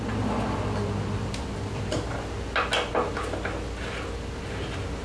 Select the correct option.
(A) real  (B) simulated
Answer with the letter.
A